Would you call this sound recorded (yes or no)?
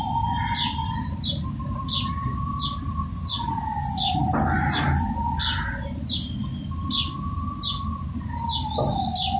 yes